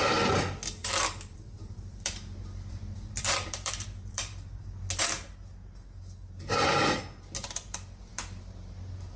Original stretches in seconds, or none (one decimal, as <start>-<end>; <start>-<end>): 0.0-0.8; 4.6-9.2